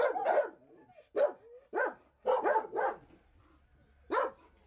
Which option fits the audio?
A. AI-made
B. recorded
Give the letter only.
B